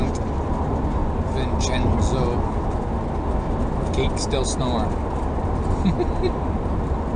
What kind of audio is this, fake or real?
real